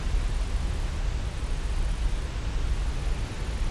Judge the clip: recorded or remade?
recorded